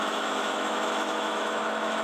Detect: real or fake fake